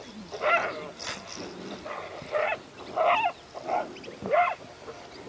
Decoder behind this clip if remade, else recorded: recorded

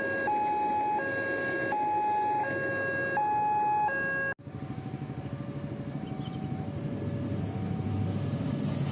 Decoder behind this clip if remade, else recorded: recorded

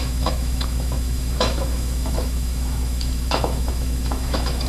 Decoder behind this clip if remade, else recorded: remade, autoencoder, DAC-VAE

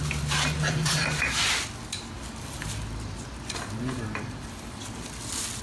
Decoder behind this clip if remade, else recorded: recorded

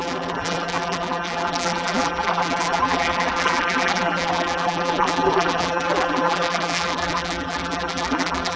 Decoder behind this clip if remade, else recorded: remade, vocoder, BigVGAN v2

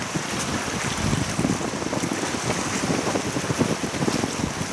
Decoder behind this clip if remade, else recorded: recorded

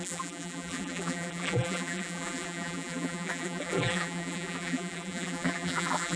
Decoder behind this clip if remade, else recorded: remade, vocoder, BigVGAN v2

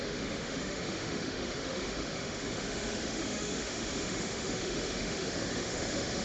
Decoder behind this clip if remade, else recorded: remade, autoencoder, DAC-VAE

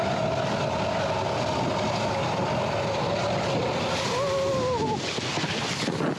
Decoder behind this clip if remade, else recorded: recorded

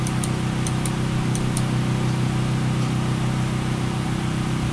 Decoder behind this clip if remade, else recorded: recorded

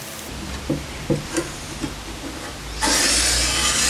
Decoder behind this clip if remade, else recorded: recorded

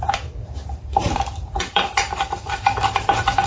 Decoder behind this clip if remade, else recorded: remade, vocoder, BigVGAN v2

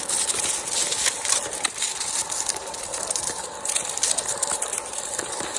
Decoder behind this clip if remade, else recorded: recorded